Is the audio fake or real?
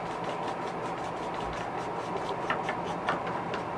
real